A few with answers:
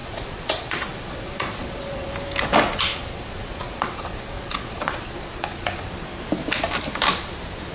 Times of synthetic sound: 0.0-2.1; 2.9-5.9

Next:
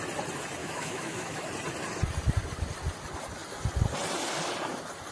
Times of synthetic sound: 0.6-1.5

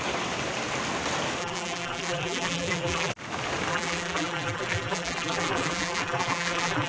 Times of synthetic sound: 1.4-3.1; 3.7-6.9

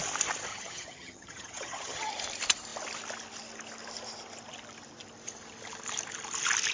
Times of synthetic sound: 0.5-2.1

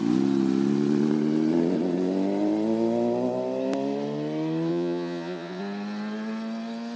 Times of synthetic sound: 4.7-5.6

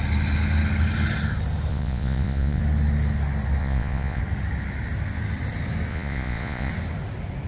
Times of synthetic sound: 1.7-2.6; 3.6-4.2; 5.9-6.7